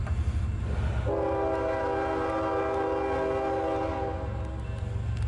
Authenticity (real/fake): real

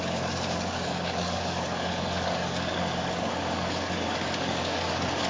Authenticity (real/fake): fake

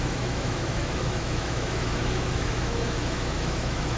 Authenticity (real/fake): fake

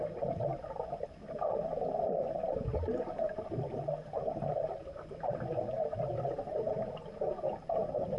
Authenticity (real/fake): real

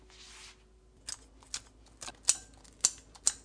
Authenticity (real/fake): real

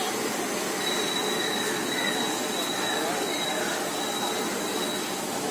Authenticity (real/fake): real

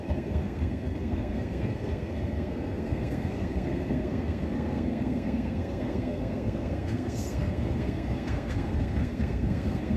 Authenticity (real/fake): fake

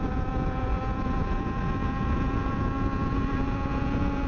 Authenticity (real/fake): fake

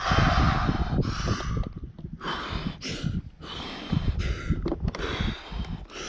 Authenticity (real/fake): real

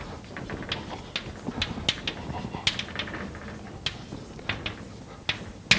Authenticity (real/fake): real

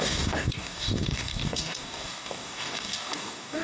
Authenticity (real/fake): fake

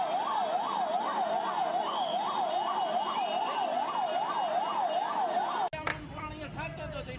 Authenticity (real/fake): real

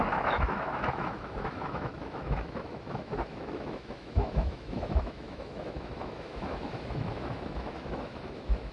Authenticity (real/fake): fake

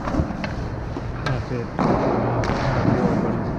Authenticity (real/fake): real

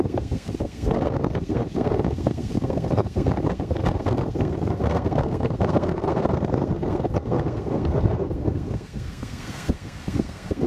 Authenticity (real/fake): fake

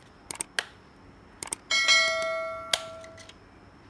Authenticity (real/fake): real